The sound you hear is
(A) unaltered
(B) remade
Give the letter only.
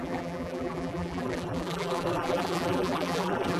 B